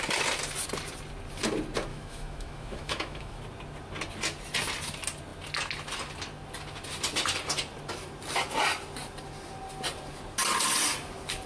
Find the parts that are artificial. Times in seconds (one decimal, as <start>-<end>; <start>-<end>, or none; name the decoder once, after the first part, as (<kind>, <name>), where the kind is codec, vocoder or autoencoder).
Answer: 1.9-3.4 (autoencoder, DAC-VAE)